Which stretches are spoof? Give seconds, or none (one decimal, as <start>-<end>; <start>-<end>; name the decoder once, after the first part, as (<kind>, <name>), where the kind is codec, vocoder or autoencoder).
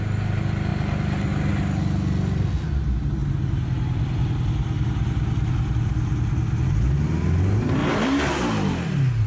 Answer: 7.8-8.4 (vocoder, BigVGAN v2)